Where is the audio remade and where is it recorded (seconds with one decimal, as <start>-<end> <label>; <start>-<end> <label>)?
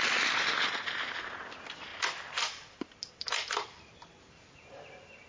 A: 0.0-5.3 recorded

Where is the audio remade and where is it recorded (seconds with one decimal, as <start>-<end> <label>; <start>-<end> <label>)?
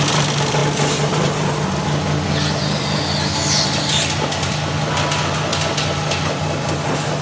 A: 0.0-7.2 recorded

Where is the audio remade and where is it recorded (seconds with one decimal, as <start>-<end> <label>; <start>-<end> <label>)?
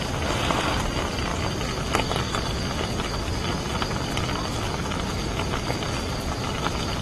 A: 0.0-7.0 recorded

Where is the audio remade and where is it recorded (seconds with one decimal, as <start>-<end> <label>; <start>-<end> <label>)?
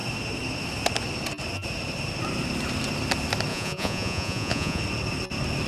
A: 0.0-3.5 recorded; 3.5-4.8 remade; 4.8-5.7 recorded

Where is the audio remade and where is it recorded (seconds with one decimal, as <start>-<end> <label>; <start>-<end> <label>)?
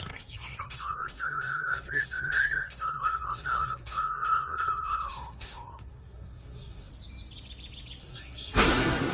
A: 0.0-6.9 remade; 6.9-8.0 recorded; 8.0-9.1 remade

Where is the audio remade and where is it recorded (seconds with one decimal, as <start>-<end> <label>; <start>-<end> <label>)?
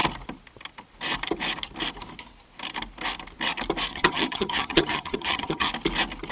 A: 0.0-3.9 recorded; 3.9-5.7 remade; 5.7-6.3 recorded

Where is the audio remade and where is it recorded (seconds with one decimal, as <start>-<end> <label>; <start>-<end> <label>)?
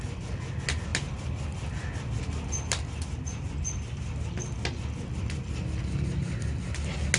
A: 0.0-7.2 recorded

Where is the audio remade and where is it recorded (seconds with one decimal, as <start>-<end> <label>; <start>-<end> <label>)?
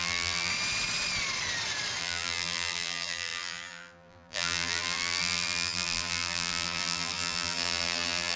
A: 0.0-0.5 remade; 0.5-2.0 recorded; 2.0-8.4 remade